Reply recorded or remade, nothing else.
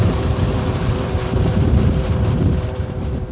remade